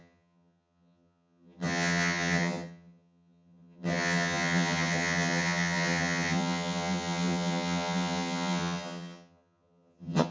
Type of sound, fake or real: fake